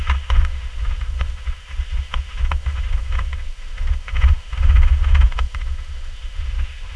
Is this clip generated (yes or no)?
yes